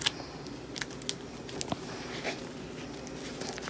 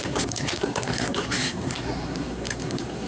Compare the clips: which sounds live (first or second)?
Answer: first